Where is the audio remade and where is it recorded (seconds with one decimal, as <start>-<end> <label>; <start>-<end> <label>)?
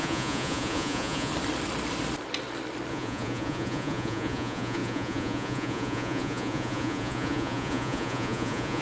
0.0-1.3 remade; 1.3-2.9 recorded; 2.9-8.8 remade